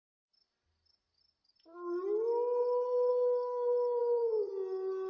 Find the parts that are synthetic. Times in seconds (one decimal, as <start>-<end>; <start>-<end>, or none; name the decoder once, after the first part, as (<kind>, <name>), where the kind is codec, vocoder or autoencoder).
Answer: 4.0-4.5 (codec, SNAC)